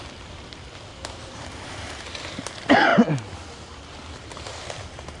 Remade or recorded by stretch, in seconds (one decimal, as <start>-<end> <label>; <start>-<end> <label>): 0.0-2.9 remade; 2.9-4.1 recorded; 4.1-5.2 remade